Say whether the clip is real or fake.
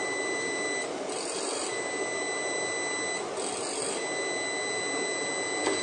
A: real